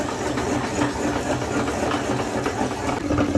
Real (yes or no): yes